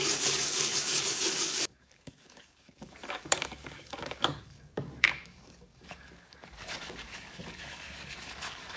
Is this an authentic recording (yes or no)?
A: no